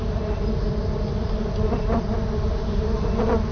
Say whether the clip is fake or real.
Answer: real